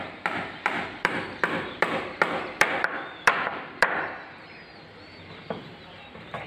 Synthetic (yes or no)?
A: yes